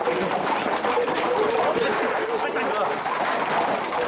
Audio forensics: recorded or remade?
recorded